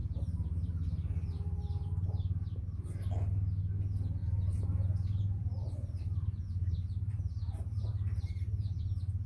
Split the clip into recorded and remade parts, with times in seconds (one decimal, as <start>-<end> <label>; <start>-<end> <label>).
0.0-4.2 recorded; 4.2-8.8 remade; 8.8-9.3 recorded